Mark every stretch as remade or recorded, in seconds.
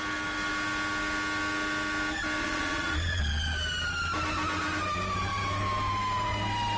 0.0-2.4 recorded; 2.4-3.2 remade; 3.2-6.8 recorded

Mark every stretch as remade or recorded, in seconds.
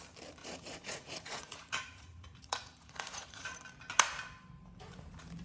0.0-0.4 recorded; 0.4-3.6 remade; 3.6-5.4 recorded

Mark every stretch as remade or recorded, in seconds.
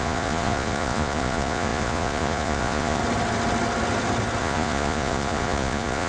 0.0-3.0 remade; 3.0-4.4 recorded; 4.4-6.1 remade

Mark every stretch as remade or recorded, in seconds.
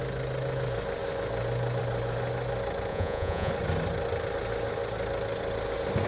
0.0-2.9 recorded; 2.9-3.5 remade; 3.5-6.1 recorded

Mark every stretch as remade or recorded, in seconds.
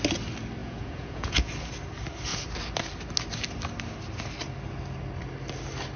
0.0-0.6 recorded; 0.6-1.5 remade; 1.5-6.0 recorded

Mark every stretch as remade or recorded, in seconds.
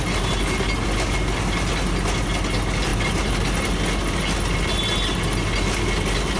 0.0-6.4 recorded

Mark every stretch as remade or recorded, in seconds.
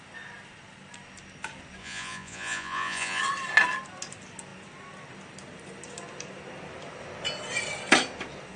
0.0-1.8 recorded; 1.8-3.2 remade; 3.2-8.6 recorded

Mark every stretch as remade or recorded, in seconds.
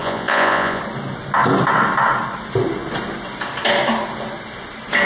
0.0-0.8 remade; 0.8-5.1 recorded